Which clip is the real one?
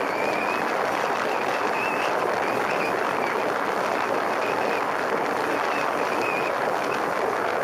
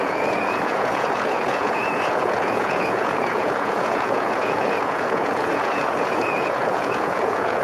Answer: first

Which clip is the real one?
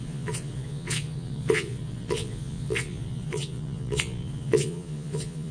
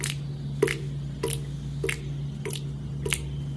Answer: second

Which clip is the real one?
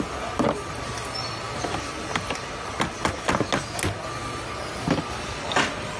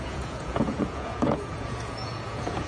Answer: first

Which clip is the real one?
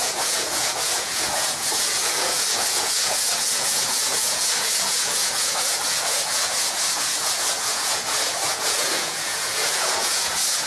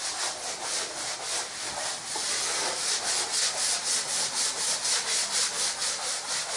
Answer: second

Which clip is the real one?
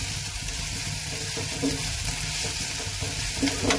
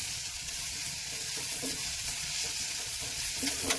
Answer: first